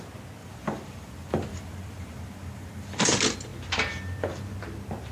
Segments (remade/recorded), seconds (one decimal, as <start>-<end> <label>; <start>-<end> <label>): 0.0-0.4 recorded; 0.4-3.1 remade; 3.1-5.1 recorded